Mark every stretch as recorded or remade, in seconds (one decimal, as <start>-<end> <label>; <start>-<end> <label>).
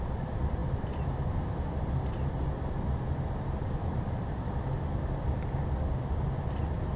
0.0-7.0 recorded